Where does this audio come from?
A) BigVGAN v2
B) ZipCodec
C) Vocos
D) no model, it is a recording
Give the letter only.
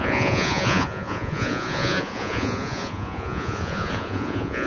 C